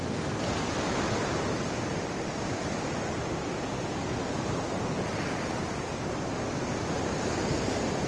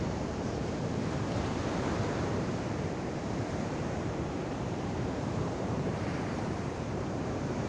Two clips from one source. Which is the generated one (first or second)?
second